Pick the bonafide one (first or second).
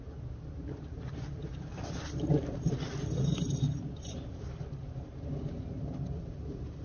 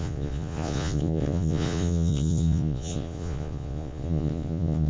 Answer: first